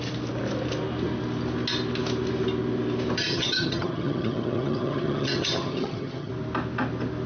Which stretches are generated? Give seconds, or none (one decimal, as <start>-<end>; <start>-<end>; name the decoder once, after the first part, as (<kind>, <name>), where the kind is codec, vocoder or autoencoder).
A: 3.2-6.3 (vocoder, HiFi-GAN)

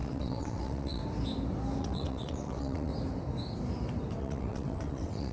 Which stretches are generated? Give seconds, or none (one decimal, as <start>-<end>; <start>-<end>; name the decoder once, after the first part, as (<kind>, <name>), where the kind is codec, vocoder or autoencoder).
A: 0.0-1.0 (vocoder, WaveNeXt); 1.8-2.9; 4.2-5.3

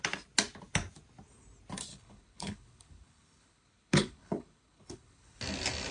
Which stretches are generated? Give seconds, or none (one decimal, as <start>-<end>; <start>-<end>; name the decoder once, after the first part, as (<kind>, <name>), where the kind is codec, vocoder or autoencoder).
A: 1.9-5.4 (codec, HILCodec)

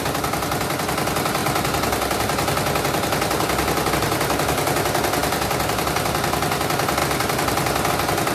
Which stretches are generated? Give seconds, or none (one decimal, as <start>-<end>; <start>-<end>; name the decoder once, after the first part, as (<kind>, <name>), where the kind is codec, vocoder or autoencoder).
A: none